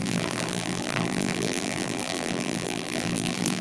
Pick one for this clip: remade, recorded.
remade